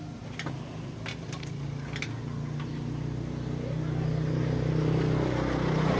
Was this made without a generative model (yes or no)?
yes